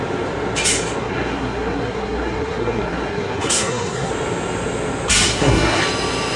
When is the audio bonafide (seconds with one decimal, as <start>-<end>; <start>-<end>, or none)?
0.0-1.0; 4.1-5.3; 5.8-6.4